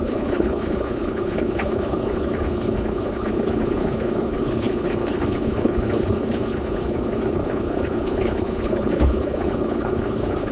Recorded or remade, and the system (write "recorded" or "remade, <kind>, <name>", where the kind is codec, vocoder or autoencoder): remade, codec, HILCodec